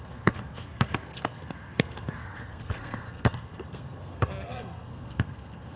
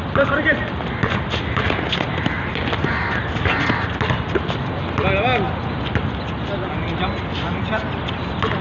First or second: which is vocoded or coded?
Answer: first